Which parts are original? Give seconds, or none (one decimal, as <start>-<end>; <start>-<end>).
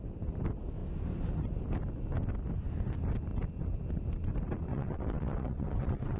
0.0-4.7